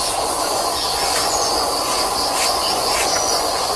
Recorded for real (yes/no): no